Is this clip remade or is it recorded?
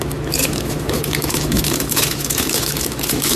remade